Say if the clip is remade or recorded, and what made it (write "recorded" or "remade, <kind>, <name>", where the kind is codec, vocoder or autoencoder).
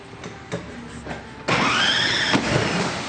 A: recorded